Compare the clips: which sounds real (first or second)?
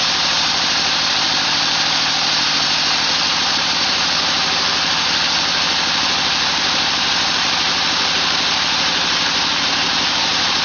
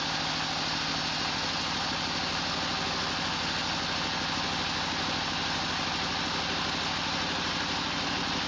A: second